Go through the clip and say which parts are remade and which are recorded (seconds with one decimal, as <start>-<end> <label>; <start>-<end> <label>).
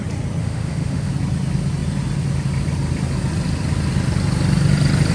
0.0-0.4 recorded; 0.4-1.1 remade; 1.1-5.1 recorded